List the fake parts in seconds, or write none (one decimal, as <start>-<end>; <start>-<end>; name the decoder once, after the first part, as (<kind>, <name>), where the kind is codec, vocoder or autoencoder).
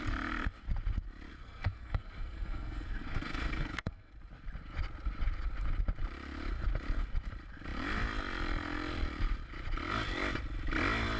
1.3-4.1 (codec, SNAC)